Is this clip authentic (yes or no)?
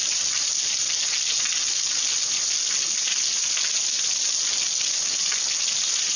yes